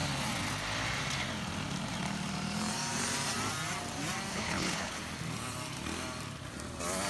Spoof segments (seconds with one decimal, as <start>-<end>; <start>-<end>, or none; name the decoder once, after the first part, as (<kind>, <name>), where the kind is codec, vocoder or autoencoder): 4.3-5.0 (codec, HILCodec)